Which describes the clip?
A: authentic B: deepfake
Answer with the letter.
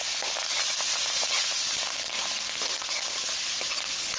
A